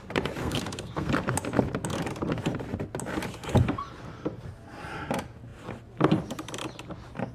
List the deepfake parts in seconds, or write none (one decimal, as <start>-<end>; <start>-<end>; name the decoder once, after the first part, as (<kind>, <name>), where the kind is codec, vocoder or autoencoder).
0.4-1.1 (codec, SNAC)